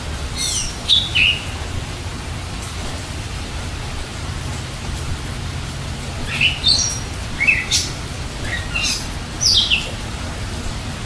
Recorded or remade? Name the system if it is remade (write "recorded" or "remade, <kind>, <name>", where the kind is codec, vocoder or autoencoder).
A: recorded